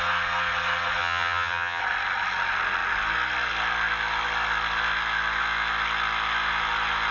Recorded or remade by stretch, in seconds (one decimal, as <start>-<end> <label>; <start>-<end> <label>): 0.0-1.0 recorded; 1.0-1.8 remade; 1.8-7.1 recorded

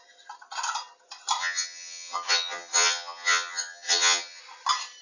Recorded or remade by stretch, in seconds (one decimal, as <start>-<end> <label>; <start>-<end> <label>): 0.0-1.4 recorded; 1.4-4.4 remade; 4.4-5.0 recorded

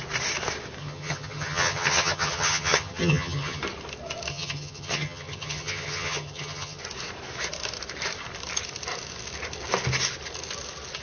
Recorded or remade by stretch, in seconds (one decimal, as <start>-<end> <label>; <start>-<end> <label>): 0.0-0.8 recorded; 0.8-3.6 remade; 3.6-4.3 recorded; 4.3-6.8 remade; 6.8-11.0 recorded

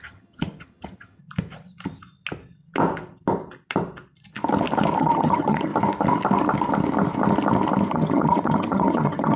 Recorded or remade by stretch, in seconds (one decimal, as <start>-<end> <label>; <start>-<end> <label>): 0.0-1.2 remade; 1.2-5.0 recorded; 5.0-5.7 remade; 5.7-7.9 recorded; 7.9-9.4 remade

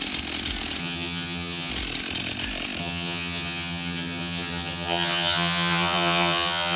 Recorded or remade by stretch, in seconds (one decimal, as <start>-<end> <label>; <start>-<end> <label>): 0.0-0.8 recorded; 0.8-1.7 remade; 1.7-2.8 recorded; 2.8-6.8 remade

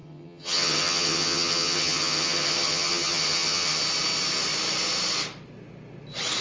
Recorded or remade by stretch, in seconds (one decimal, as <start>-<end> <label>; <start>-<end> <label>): 0.0-3.8 remade; 3.8-6.4 recorded

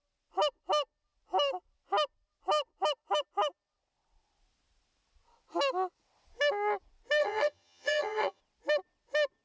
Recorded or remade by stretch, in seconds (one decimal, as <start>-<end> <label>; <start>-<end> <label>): 0.0-7.2 recorded; 7.2-8.4 remade; 8.4-9.4 recorded